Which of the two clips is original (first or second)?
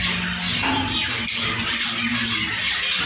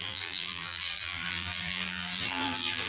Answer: first